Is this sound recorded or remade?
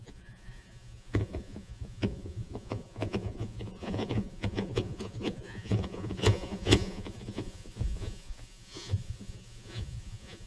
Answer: remade